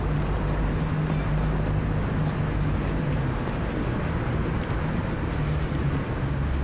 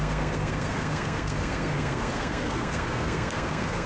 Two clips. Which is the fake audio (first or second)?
second